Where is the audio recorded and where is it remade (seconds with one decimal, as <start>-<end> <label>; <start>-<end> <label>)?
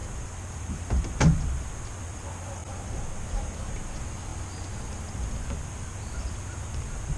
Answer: 0.0-0.6 recorded; 0.6-2.6 remade; 2.6-3.3 recorded; 3.3-4.3 remade; 4.3-5.3 recorded; 5.3-7.2 remade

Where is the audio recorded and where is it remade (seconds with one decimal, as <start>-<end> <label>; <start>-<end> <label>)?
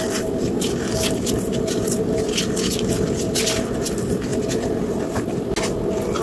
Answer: 0.0-4.3 recorded; 4.3-5.3 remade; 5.3-6.2 recorded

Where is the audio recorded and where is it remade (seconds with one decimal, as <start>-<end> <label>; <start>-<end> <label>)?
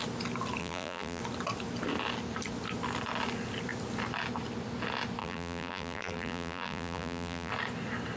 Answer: 0.0-0.6 recorded; 0.6-1.2 remade; 1.2-5.2 recorded; 5.2-7.5 remade; 7.5-8.2 recorded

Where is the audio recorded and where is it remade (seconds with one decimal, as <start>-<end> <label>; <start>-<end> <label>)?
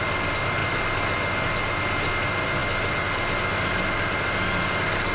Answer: 0.0-5.1 recorded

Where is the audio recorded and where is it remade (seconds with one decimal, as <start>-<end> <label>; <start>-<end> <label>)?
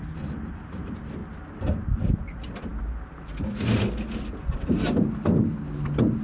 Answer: 0.0-1.2 recorded; 1.2-1.8 remade; 1.8-6.2 recorded